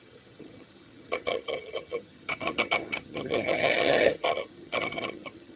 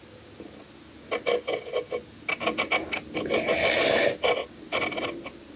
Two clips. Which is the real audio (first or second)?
second